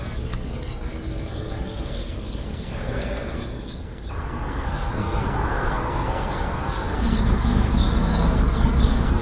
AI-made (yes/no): yes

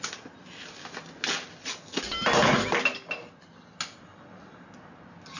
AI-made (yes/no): no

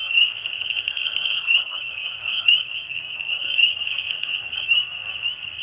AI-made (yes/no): yes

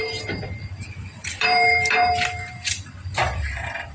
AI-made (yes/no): yes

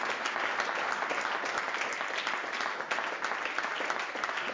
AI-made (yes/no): no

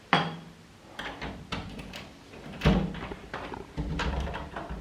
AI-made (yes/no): no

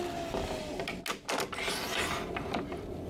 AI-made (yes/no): no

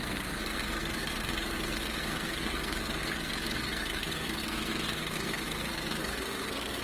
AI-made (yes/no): yes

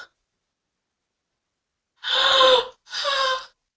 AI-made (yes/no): no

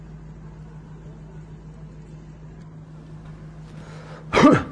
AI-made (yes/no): no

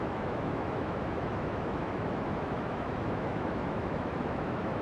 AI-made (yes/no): yes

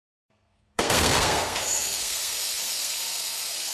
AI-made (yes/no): yes